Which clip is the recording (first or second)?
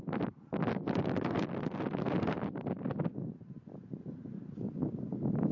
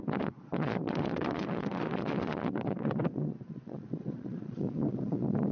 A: first